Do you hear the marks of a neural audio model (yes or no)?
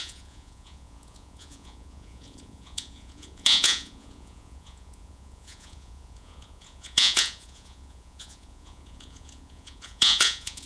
yes